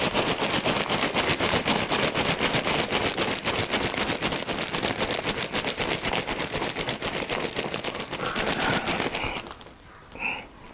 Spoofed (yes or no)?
no